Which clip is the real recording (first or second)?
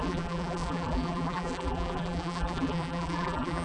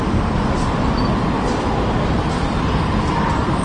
second